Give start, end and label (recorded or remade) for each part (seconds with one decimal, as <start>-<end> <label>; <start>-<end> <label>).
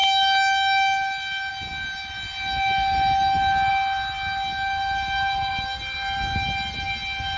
0.0-7.4 recorded